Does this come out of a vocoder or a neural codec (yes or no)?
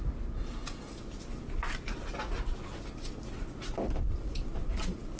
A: no